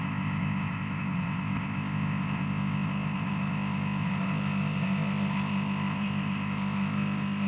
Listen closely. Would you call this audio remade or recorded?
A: remade